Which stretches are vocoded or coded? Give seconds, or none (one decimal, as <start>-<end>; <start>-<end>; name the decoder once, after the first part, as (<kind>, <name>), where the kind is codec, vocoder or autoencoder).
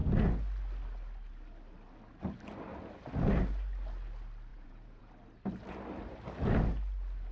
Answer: 4.5-5.1 (vocoder, Vocos)